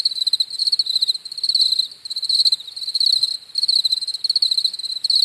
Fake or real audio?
real